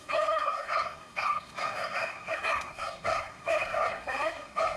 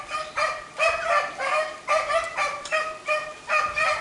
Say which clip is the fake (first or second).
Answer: first